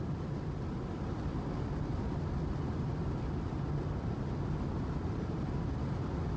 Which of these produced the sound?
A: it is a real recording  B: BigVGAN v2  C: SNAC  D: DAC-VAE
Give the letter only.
A